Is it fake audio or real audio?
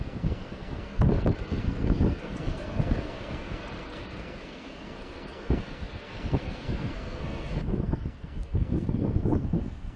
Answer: fake